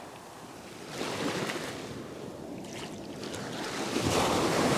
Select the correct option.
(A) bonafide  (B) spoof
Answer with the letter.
A